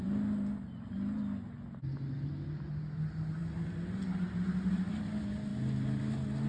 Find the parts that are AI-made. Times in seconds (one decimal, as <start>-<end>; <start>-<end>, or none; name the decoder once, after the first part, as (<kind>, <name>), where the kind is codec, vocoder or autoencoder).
none